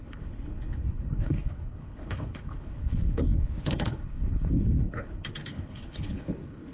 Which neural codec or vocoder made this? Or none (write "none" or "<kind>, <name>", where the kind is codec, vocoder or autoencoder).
codec, HILCodec